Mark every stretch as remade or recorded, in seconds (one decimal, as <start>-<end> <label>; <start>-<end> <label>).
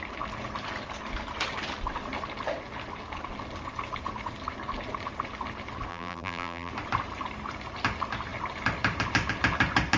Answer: 0.0-5.9 recorded; 5.9-6.7 remade; 6.7-10.0 recorded